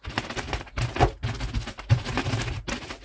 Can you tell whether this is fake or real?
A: real